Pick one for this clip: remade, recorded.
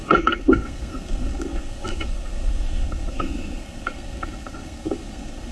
remade